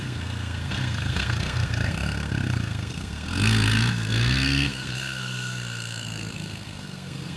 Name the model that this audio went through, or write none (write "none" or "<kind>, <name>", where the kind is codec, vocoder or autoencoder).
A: codec, SNAC